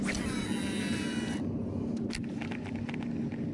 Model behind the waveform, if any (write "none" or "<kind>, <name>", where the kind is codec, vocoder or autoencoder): none